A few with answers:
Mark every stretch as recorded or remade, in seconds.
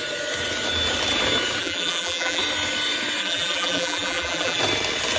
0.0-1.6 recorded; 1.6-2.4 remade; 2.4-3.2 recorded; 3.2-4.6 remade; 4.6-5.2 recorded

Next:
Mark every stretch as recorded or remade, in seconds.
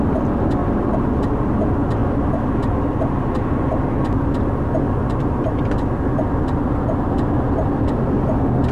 0.0-5.0 recorded; 5.0-5.6 remade; 5.6-8.7 recorded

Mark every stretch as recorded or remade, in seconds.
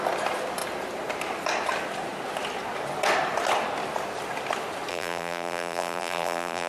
0.0-4.9 recorded; 4.9-6.7 remade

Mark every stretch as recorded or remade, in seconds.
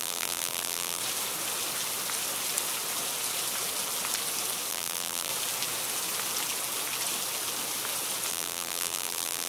0.0-1.0 remade; 1.0-4.7 recorded; 4.7-5.3 remade; 5.3-8.3 recorded; 8.3-9.5 remade